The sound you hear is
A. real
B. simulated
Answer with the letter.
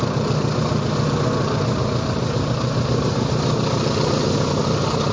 A